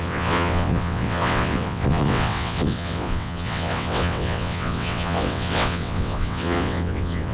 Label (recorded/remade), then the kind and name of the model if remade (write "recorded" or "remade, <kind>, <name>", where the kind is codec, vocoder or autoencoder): remade, vocoder, WaveNeXt